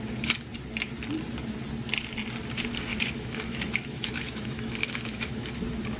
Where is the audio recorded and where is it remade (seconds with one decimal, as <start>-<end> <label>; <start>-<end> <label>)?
0.0-2.9 recorded; 2.9-5.5 remade; 5.5-6.0 recorded